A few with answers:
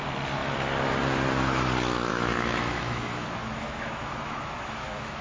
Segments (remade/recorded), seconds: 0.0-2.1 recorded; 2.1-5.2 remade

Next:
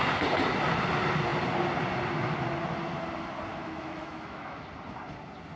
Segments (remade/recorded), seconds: 0.0-3.5 recorded; 3.5-4.6 remade; 4.6-5.6 recorded

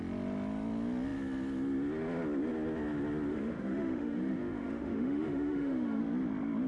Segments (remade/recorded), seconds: 0.0-3.3 recorded; 3.3-6.0 remade; 6.0-6.7 recorded